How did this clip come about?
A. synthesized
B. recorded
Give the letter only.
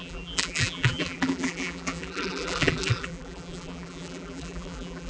A